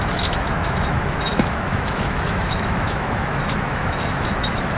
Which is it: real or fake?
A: fake